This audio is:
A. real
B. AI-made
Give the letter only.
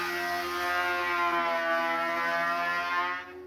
A